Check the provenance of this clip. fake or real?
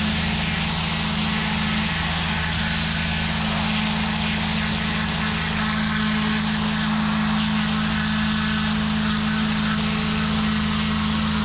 real